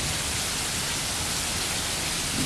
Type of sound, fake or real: real